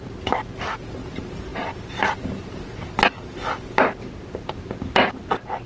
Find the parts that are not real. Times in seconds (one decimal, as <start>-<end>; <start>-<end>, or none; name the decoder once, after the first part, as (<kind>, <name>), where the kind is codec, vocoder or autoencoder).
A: none